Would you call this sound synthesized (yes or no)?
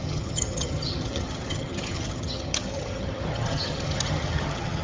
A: yes